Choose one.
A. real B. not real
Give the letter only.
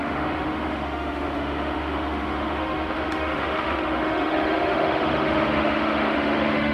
B